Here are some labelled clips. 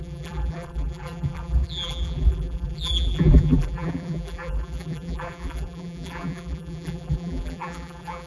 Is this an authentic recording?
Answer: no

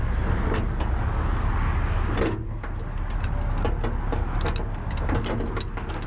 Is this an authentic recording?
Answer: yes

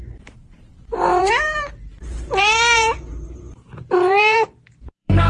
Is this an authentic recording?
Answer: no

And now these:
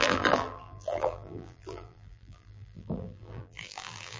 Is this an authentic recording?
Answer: no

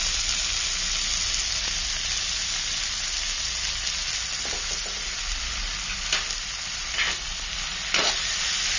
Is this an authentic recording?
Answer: yes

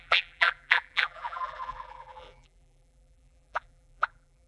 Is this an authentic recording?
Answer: no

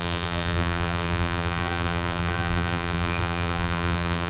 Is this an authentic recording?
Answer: no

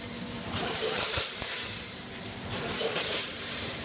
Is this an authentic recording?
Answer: no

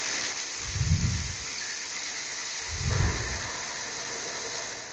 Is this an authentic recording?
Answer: yes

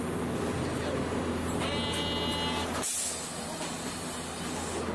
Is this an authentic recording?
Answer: yes